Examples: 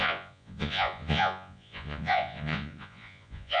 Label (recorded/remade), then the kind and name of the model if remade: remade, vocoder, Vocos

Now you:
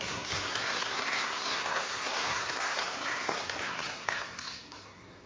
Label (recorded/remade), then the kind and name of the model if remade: remade, codec, SNAC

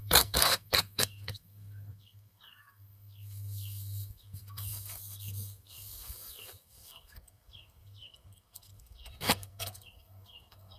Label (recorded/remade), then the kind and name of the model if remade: remade, codec, SNAC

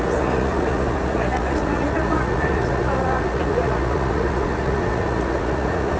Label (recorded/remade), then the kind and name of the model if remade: remade, vocoder, Vocos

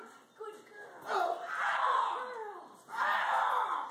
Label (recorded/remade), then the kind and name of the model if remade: recorded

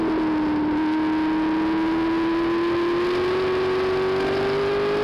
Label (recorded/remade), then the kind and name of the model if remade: recorded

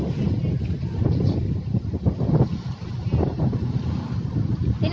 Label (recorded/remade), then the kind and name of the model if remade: recorded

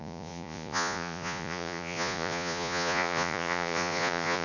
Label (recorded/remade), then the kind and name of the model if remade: remade, vocoder, Vocos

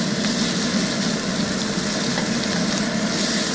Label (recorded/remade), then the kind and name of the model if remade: recorded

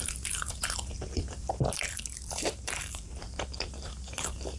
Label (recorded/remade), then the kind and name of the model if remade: remade, vocoder, BigVGAN v2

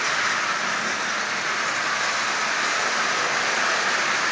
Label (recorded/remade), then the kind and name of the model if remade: recorded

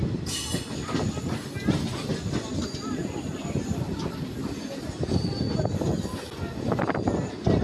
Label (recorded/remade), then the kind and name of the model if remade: recorded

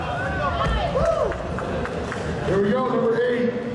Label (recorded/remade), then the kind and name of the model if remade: recorded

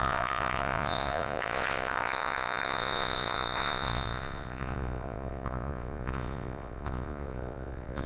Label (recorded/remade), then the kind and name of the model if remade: remade, vocoder, Vocos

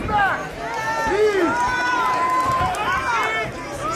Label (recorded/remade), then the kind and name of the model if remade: recorded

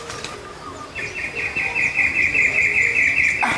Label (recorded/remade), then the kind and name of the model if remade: recorded